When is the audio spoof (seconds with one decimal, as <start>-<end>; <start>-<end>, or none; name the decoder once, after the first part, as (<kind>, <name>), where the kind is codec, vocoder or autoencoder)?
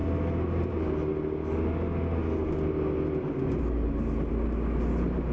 none